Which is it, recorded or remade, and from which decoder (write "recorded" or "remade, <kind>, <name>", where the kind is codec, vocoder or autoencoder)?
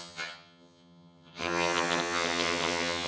remade, vocoder, HiFi-GAN